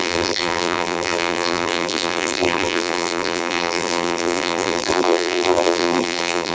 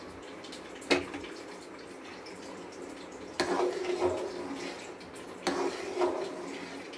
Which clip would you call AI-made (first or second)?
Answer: first